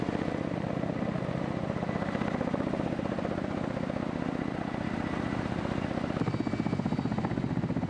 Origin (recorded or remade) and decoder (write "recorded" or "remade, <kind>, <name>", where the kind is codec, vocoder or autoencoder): recorded